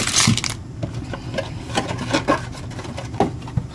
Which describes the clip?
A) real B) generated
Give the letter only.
A